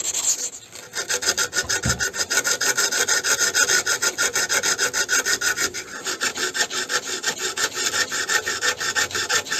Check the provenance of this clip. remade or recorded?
recorded